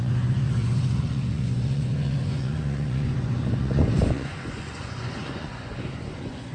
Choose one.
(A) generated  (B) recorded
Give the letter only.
A